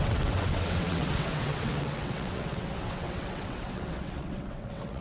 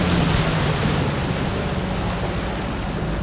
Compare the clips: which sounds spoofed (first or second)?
first